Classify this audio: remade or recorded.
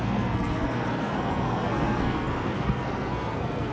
remade